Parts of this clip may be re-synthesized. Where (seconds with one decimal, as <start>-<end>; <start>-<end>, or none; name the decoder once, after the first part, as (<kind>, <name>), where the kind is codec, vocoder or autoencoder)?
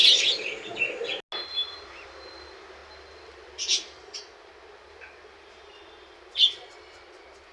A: none